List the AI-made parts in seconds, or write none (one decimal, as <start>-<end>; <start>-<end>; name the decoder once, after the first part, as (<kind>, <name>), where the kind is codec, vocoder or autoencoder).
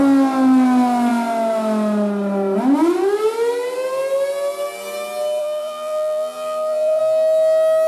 5.4-7.0 (vocoder, BigVGAN v2)